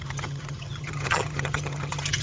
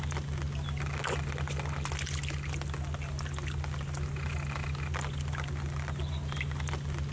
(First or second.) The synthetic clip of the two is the first